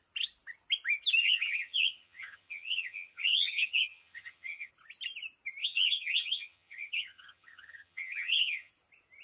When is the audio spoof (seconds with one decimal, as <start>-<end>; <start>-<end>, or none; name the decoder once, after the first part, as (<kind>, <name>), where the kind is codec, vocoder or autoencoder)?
1.2-4.7 (vocoder, HiFi-GAN); 5.6-8.7